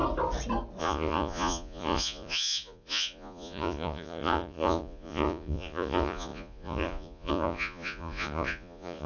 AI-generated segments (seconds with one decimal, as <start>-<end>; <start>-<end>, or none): 0.8-9.1